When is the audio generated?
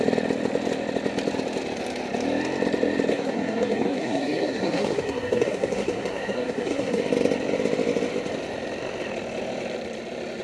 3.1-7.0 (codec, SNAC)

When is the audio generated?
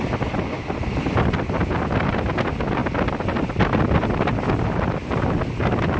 none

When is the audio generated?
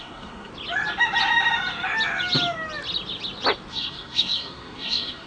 0.0-0.5 (codec, SNAC); 3.7-5.3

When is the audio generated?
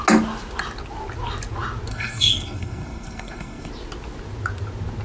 1.9-3.7 (codec, SNAC)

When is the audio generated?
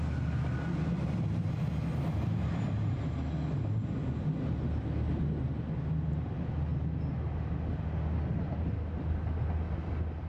none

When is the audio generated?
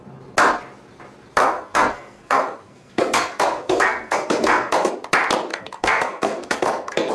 1.4-4.9 (codec, SNAC); 5.5-7.1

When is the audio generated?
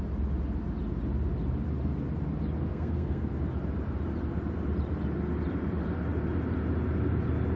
2.7-3.3 (codec, SNAC)